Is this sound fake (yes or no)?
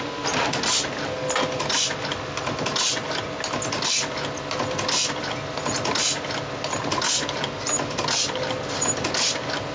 no